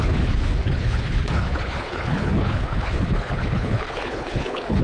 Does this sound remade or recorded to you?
remade